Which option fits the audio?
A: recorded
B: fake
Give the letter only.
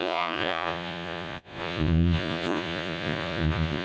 B